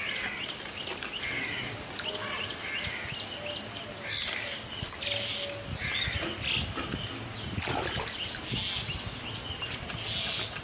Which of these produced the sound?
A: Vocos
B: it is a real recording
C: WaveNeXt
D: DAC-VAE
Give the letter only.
B